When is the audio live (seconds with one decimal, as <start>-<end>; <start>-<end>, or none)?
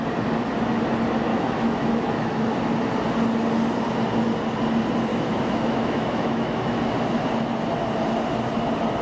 0.0-1.3; 2.4-5.1; 6.9-9.0